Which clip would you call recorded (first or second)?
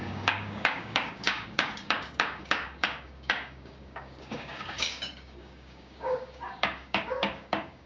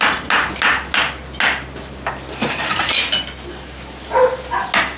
second